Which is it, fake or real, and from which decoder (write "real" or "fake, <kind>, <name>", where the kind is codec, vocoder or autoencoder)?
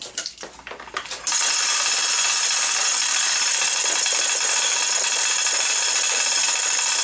real